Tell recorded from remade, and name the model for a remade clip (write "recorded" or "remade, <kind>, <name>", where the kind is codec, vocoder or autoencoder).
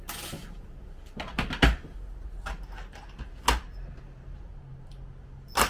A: recorded